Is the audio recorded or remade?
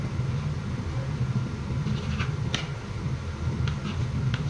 recorded